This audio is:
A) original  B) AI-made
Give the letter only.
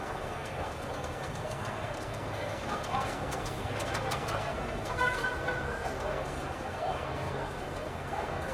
B